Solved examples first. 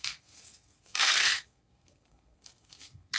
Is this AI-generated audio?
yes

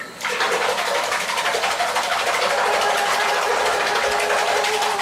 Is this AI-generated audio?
no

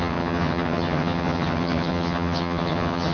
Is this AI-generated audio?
yes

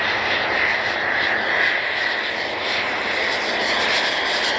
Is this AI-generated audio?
no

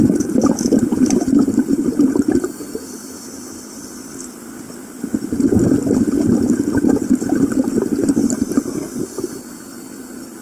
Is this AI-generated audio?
no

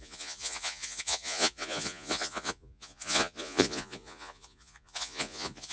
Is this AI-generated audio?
yes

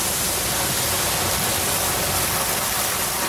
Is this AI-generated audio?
no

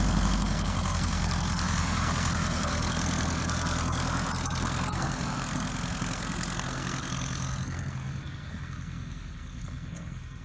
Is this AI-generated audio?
yes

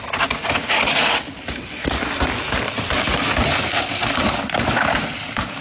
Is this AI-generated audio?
no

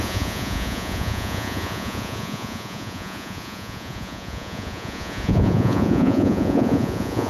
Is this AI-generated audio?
yes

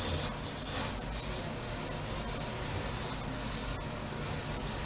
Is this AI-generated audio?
no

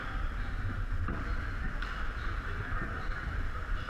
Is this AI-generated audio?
no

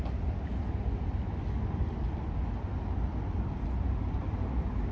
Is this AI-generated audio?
no